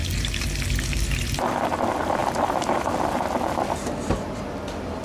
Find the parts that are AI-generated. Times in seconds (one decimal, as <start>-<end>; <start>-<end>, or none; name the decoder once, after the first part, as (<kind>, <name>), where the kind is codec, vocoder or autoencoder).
1.6-2.2 (vocoder, BigVGAN v2); 3.2-3.8